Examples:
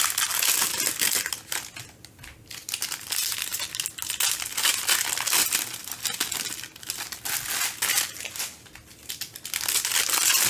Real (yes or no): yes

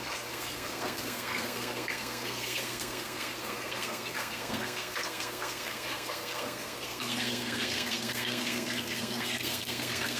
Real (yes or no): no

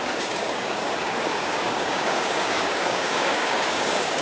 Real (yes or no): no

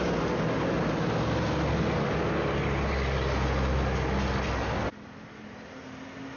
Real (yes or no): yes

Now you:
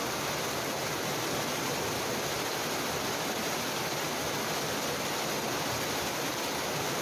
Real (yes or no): yes